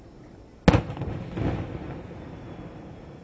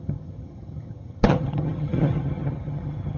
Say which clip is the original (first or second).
first